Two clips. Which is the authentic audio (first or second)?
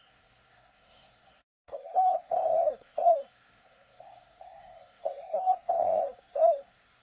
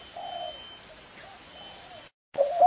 second